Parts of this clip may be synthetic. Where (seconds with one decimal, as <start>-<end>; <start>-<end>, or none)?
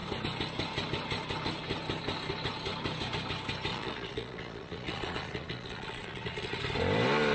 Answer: 3.7-6.6